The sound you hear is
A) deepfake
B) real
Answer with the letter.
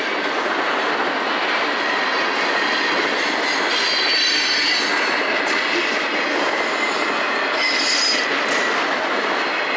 B